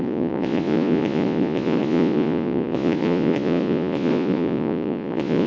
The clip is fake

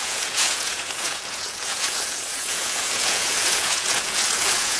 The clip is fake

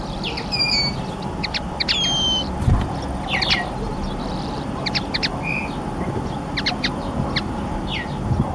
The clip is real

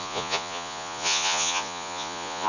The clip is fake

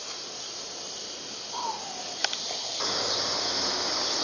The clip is real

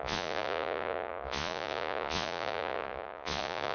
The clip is fake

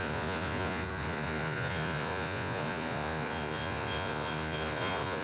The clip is fake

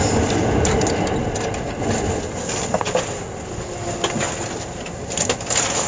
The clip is real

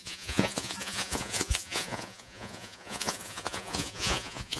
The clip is fake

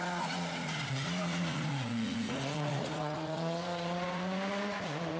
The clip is fake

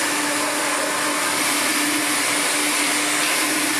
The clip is real